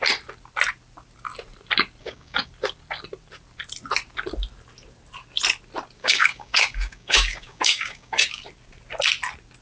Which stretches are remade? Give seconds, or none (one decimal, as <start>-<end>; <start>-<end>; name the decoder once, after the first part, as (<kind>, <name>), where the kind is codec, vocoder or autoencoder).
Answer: 2.0-2.5 (codec, DAC); 6.0-8.4